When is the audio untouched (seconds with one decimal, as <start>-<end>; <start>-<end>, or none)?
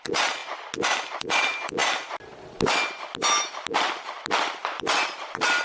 0.4-1.1; 1.8-4.3